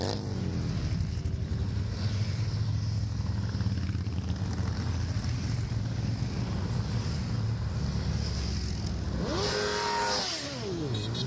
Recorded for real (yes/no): yes